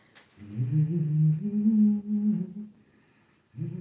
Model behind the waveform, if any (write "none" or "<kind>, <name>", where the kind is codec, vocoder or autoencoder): none